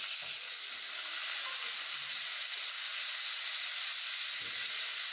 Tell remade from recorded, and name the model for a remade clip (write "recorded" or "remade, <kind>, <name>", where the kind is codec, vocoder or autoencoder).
recorded